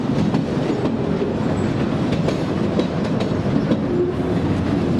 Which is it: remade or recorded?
recorded